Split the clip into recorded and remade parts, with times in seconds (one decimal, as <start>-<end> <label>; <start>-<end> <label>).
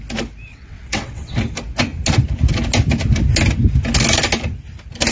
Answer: 0.0-0.5 recorded; 0.5-1.4 remade; 1.4-5.1 recorded